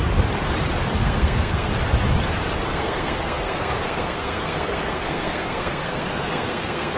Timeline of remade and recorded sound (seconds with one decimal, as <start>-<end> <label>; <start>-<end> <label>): 0.0-1.0 recorded; 1.0-1.7 remade; 1.7-2.7 recorded; 2.7-7.0 remade

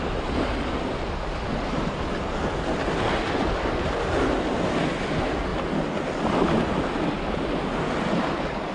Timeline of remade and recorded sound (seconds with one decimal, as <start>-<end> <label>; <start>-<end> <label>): 0.0-8.7 recorded

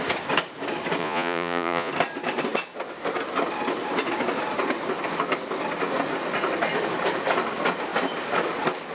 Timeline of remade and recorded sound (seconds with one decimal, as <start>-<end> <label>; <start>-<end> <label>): 0.0-1.0 recorded; 1.0-1.9 remade; 1.9-8.9 recorded

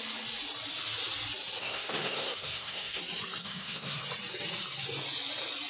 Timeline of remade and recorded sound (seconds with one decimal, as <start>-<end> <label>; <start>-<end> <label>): 0.0-1.6 recorded; 1.6-3.0 remade; 3.0-3.4 recorded; 3.4-4.0 remade; 4.0-5.7 recorded

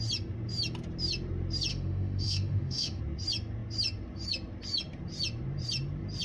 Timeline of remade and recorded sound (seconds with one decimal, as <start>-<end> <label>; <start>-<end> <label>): 0.0-1.7 recorded; 1.7-3.0 remade; 3.0-6.2 recorded

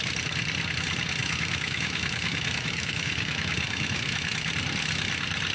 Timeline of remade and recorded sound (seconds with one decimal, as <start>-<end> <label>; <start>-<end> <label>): 0.0-1.2 recorded; 1.2-4.5 remade; 4.5-5.5 recorded

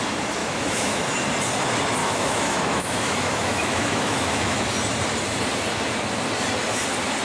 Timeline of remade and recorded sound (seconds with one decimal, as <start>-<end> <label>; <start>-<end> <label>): 0.0-0.4 recorded; 0.4-1.1 remade; 1.1-2.0 recorded; 2.0-4.7 remade; 4.7-7.2 recorded